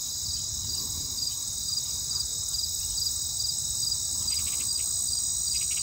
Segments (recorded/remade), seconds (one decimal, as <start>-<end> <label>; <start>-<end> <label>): 0.0-5.8 recorded